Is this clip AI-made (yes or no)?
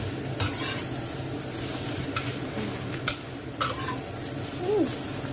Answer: no